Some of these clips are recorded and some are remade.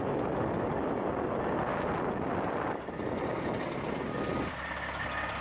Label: recorded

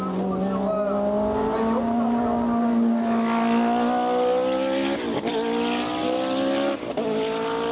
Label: recorded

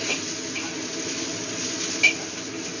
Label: recorded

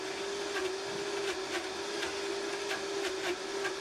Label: recorded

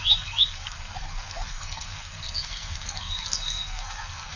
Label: remade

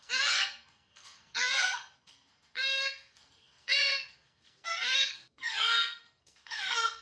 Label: remade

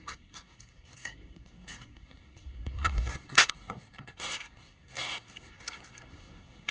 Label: remade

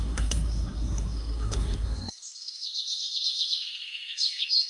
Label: remade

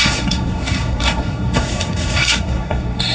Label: remade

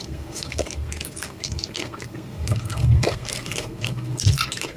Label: remade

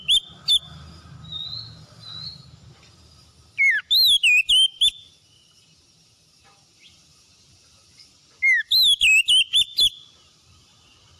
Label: recorded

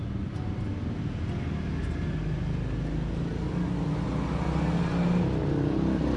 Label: recorded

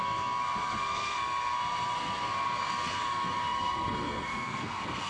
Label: remade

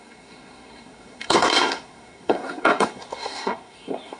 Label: remade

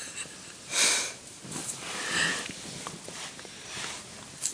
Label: recorded